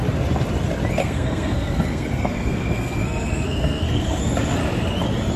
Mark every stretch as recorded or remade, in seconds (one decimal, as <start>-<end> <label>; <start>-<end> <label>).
0.0-1.0 recorded; 1.0-4.2 remade; 4.2-5.4 recorded